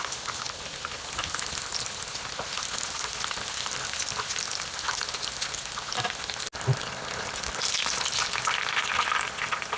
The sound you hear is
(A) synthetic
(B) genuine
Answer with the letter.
B